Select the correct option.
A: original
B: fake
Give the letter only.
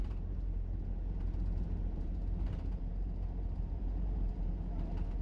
B